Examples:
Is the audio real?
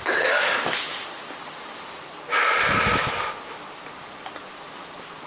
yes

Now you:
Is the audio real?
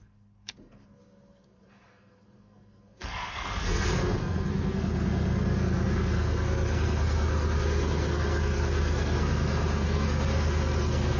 no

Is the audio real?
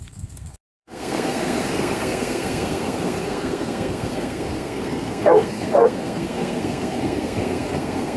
no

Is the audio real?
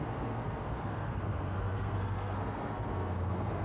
no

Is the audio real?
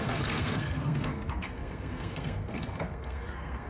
no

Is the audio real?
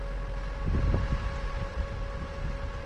yes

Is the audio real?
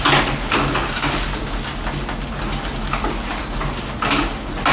yes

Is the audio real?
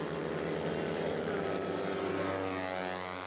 yes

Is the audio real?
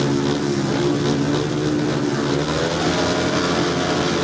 yes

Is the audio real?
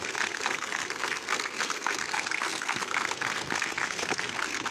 no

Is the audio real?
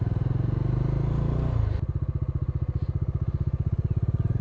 yes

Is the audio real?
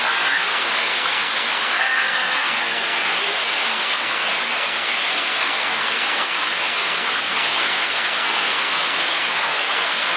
no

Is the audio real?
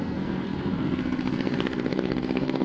no